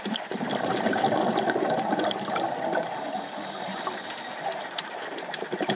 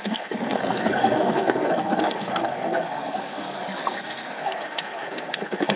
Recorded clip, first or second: first